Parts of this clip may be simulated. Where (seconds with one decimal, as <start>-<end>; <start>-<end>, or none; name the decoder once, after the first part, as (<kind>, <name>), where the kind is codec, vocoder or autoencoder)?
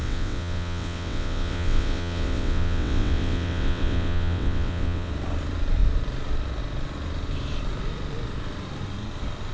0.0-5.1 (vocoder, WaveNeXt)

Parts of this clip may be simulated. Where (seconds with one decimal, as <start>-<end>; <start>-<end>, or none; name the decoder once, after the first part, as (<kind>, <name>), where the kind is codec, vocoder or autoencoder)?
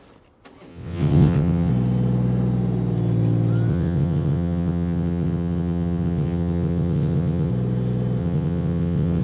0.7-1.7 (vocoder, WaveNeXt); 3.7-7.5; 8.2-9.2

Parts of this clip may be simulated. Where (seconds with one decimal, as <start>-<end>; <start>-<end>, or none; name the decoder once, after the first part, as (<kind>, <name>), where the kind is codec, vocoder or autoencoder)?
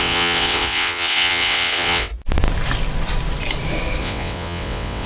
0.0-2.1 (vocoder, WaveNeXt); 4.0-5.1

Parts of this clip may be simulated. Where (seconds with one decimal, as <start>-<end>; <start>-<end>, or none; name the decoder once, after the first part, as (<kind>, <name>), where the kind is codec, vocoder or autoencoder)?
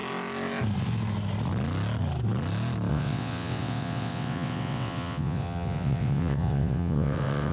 2.9-7.5 (vocoder, WaveNeXt)